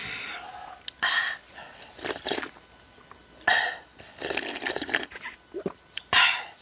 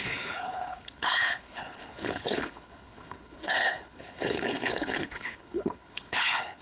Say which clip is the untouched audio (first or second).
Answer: first